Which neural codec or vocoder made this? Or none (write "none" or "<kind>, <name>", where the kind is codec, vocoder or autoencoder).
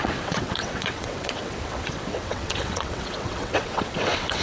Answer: vocoder, WaveNeXt